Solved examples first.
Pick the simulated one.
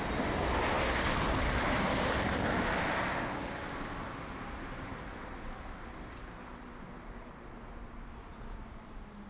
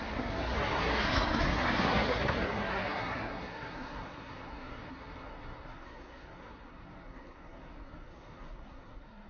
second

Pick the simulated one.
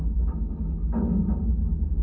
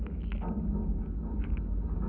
second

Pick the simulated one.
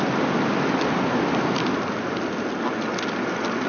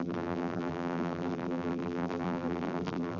second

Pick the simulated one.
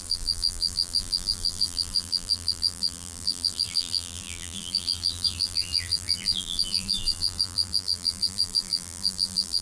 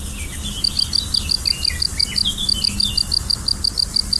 first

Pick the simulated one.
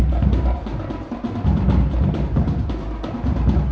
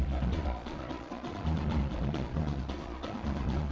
second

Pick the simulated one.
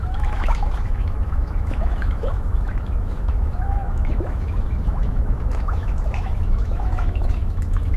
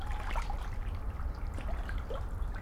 first